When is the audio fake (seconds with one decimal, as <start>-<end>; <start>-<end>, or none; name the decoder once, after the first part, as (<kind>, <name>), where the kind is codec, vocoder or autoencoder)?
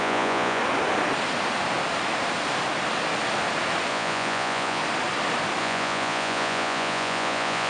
0.0-0.6 (vocoder, Vocos); 3.9-4.8; 5.6-7.7